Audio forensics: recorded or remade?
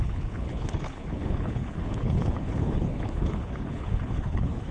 remade